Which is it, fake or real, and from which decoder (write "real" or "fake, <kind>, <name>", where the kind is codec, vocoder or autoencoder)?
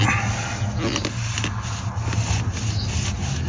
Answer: real